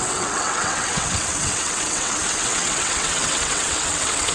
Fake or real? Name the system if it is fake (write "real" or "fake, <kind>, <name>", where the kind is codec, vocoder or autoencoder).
fake, vocoder, WaveNeXt